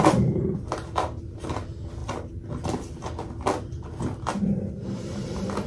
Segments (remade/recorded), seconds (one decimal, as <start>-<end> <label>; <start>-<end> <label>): 0.0-5.7 recorded